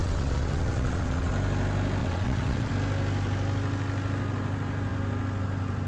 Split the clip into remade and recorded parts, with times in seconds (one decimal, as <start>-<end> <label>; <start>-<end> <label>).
0.0-1.3 remade; 1.3-2.0 recorded; 2.0-2.7 remade; 2.7-5.9 recorded

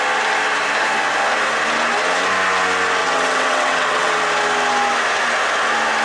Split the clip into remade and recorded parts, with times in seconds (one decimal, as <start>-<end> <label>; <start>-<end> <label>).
0.0-3.0 recorded; 3.0-4.1 remade; 4.1-6.0 recorded

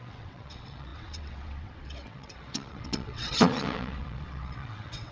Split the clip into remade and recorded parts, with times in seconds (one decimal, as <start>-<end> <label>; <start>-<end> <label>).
0.0-5.1 remade

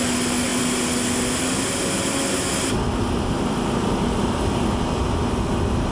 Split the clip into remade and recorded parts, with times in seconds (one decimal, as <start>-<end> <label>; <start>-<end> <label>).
0.0-5.9 recorded